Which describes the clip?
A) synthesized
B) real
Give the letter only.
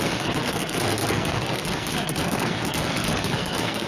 A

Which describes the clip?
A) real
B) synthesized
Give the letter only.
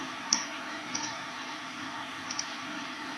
B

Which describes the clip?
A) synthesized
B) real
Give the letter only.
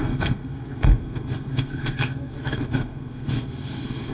A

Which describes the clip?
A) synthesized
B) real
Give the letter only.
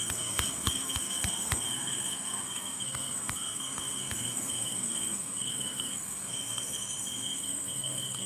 A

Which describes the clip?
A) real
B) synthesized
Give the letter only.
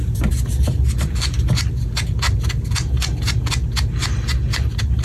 A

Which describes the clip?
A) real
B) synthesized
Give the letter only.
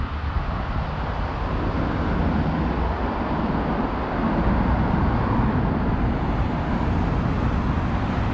A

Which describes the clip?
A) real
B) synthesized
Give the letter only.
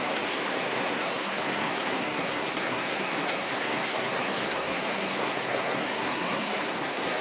B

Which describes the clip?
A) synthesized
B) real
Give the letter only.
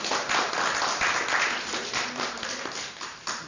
B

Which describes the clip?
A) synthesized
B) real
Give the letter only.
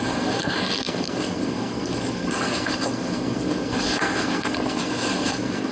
A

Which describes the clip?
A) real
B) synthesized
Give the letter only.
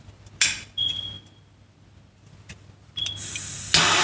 A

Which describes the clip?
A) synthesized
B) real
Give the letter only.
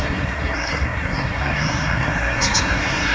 A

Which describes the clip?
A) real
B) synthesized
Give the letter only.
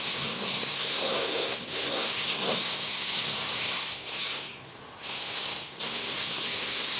B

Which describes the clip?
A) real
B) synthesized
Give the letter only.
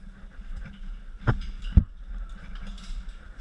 A